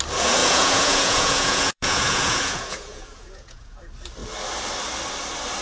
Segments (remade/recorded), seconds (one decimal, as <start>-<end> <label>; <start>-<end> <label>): 0.0-0.4 recorded; 0.4-3.8 remade; 3.8-5.6 recorded